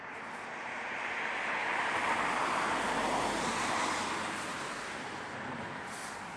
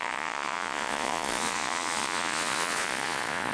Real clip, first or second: first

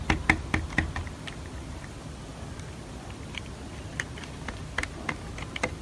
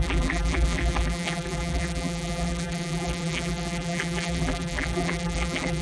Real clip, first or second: first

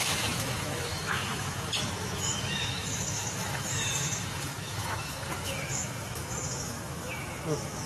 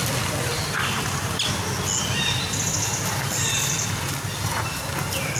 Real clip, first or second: second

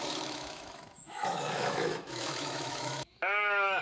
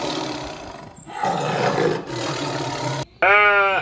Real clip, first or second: second